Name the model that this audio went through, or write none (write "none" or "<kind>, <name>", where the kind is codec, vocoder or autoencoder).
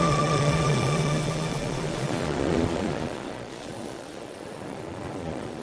vocoder, Vocos